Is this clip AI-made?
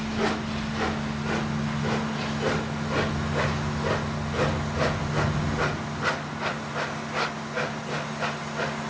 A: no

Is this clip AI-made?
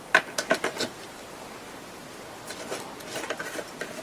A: no